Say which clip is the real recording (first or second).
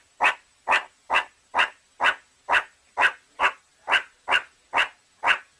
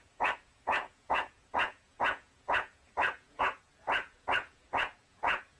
first